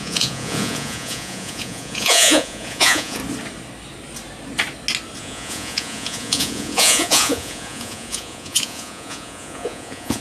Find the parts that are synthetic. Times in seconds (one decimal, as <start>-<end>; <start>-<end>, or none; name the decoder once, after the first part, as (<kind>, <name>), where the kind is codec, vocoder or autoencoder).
0.0-3.2 (vocoder, Vocos); 5.2-10.2